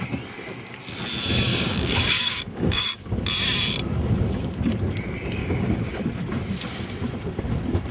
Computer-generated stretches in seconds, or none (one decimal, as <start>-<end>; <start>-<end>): 1.5-3.0; 5.4-6.0